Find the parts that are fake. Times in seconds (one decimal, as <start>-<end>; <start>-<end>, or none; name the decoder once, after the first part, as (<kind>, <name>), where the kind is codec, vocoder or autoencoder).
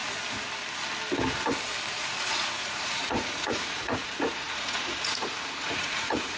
1.9-6.4 (vocoder, Vocos)